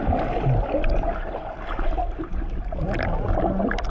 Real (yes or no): yes